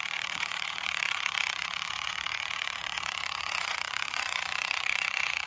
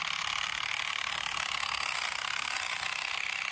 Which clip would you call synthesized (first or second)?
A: first